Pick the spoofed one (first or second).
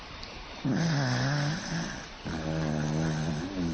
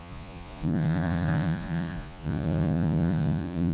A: second